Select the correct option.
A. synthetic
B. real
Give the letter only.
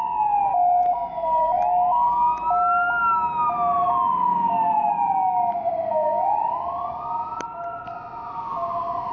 B